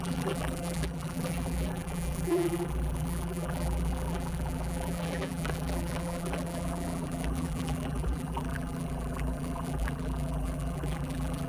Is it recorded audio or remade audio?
remade